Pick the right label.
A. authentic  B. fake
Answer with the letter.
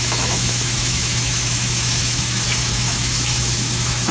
B